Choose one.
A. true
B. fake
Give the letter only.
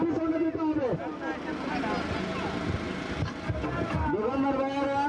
A